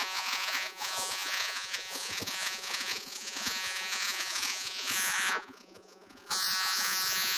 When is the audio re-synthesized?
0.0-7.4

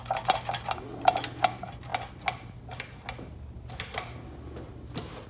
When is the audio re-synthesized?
none

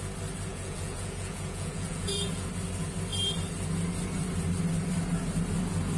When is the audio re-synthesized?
0.5-2.5

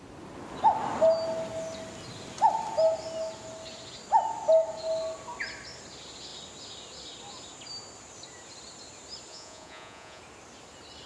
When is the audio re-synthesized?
9.3-10.2